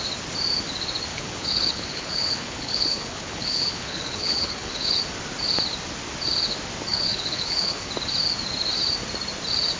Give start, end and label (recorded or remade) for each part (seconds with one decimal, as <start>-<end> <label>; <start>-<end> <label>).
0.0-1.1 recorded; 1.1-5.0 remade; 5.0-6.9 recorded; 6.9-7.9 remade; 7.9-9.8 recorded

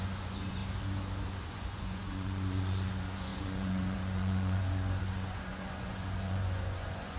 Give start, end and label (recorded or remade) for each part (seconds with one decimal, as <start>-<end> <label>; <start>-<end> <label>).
0.0-0.6 remade; 0.6-1.5 recorded; 1.5-7.2 remade

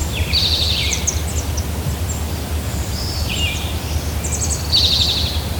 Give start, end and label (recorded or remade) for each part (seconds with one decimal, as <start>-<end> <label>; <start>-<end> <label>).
0.0-1.0 remade; 1.0-2.7 recorded; 2.7-3.7 remade; 3.7-5.6 recorded